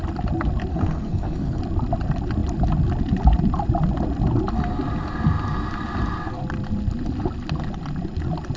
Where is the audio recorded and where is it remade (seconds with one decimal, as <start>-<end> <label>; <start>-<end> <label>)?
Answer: 0.0-0.7 recorded; 0.7-1.6 remade; 1.6-8.6 recorded